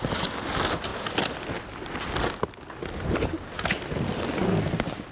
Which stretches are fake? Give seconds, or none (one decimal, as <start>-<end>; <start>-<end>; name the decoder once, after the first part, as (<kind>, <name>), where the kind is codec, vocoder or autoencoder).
none